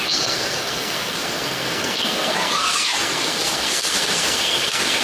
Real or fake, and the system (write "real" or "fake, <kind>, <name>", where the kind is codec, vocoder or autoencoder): fake, codec, SNAC